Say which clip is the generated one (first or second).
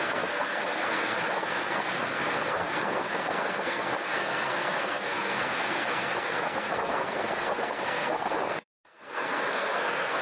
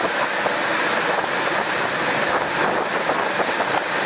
first